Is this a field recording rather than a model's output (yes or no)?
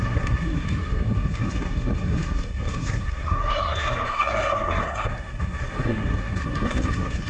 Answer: no